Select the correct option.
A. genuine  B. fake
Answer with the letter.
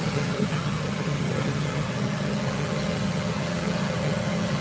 B